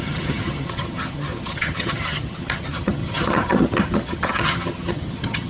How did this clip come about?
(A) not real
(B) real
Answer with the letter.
A